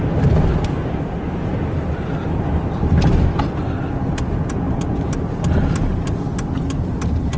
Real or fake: real